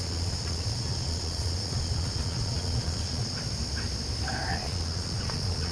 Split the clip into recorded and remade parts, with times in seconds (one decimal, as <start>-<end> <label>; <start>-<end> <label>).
0.0-3.4 remade; 3.4-4.5 recorded; 4.5-5.7 remade